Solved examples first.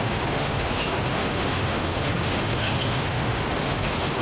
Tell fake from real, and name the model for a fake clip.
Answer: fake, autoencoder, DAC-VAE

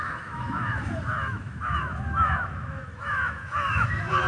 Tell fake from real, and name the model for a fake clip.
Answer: fake, autoencoder, DAC-VAE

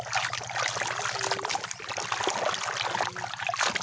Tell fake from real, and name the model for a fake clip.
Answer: real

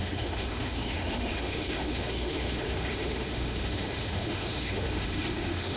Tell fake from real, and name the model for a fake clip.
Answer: fake, autoencoder, DAC-VAE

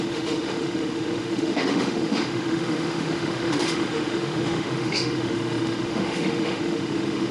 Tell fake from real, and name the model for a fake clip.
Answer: fake, autoencoder, DAC-VAE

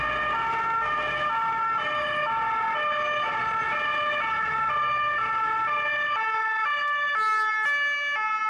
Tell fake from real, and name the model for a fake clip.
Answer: real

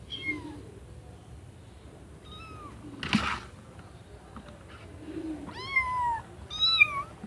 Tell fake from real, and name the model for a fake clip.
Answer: real